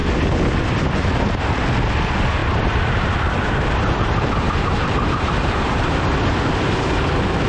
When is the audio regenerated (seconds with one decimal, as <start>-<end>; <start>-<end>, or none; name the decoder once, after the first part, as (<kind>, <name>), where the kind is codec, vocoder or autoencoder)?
2.4-5.9 (vocoder, BigVGAN v2)